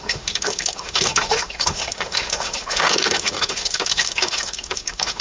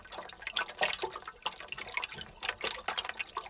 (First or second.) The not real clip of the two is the first